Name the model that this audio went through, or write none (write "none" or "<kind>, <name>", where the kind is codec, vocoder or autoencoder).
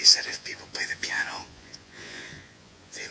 vocoder, Vocos